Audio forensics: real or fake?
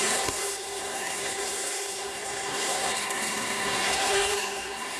fake